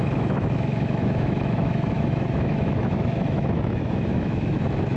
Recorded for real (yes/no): no